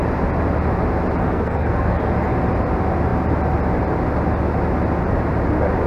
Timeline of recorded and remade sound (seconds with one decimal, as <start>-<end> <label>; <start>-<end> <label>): 0.0-1.2 recorded; 1.2-2.0 remade; 2.0-5.9 recorded